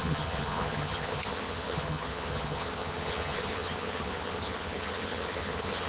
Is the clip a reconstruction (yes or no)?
yes